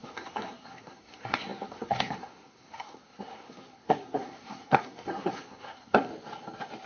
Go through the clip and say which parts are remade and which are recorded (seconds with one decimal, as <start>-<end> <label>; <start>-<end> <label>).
0.0-6.1 remade; 6.1-6.9 recorded